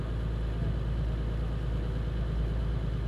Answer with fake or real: real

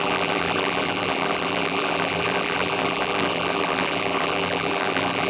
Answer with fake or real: fake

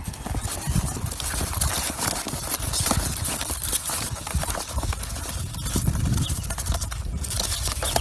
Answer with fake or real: real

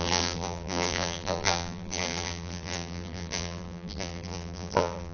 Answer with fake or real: fake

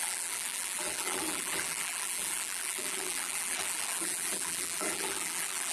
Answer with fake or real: fake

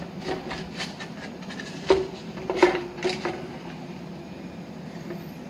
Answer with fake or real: real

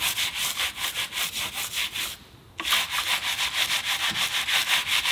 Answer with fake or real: real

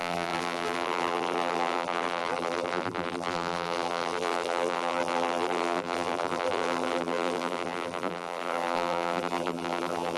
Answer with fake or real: fake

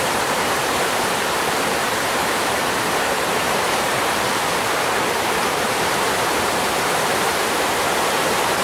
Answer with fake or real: fake